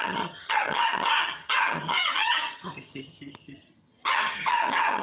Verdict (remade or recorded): remade